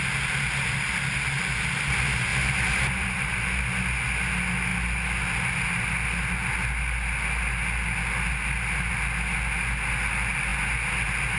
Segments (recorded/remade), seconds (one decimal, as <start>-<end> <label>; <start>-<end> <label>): 0.0-2.3 recorded; 2.3-3.6 remade; 3.6-11.4 recorded